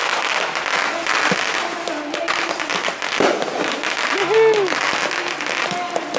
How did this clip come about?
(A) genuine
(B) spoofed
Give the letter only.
A